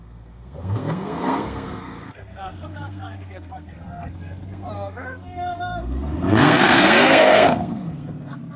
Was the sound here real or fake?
fake